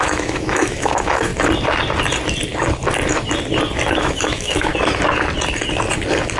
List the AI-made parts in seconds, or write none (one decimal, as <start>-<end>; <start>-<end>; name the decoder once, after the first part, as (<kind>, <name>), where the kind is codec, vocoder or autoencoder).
0.0-1.3 (autoencoder, DAC-VAE); 3.9-4.7